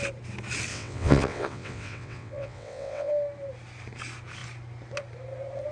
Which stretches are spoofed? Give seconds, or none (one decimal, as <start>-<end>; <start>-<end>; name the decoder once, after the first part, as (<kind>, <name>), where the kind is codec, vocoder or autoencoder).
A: 0.7-3.1 (vocoder, WaveNeXt)